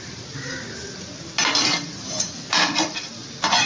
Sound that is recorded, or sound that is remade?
recorded